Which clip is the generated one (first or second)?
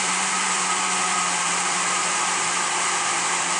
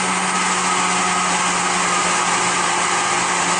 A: first